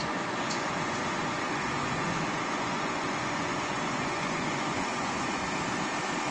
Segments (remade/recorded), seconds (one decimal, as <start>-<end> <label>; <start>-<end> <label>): 0.0-5.4 remade; 5.4-6.3 recorded